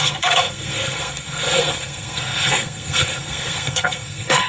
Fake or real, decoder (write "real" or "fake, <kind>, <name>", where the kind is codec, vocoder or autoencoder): fake, codec, SNAC